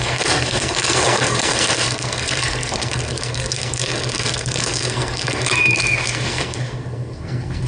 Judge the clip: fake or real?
fake